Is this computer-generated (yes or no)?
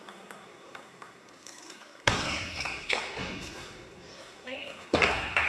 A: yes